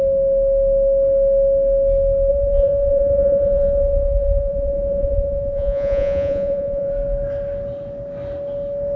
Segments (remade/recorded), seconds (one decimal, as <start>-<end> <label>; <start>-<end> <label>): 0.0-2.3 recorded; 2.3-6.9 remade; 6.9-9.0 recorded